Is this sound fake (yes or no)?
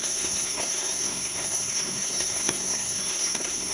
yes